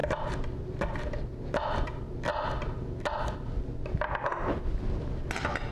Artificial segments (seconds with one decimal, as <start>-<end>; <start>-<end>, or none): none